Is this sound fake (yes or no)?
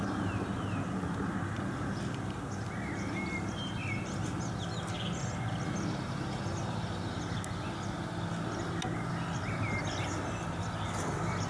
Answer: no